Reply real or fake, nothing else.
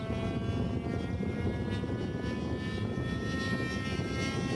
real